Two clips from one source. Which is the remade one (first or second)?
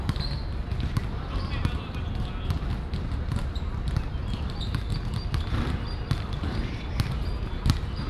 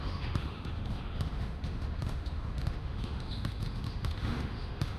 second